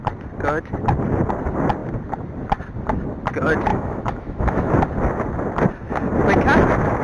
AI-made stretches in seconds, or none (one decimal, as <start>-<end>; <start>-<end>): 3.7-4.7